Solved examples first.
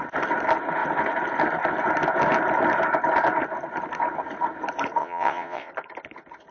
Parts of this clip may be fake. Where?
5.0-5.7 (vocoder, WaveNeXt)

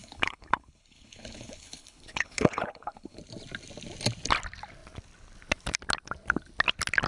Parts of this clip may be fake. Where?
0.0-3.2 (codec, HILCodec)

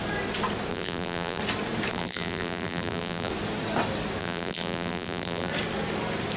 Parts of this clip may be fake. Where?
0.7-1.4 (vocoder, BigVGAN v2); 1.9-3.3; 4.2-5.5

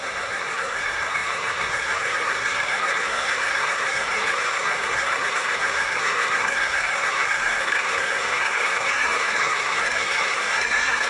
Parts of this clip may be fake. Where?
0.0-11.1 (codec, SNAC)

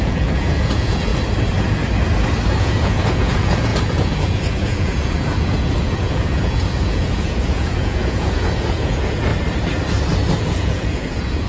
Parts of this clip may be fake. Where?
0.0-1.1 (vocoder, Vocos); 2.6-9.3; 10.4-11.5

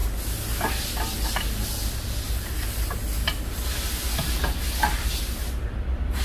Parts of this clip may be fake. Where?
none

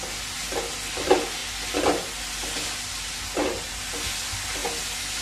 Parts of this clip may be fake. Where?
none